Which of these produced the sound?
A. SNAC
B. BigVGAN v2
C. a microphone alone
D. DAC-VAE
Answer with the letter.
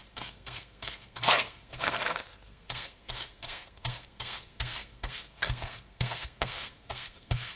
A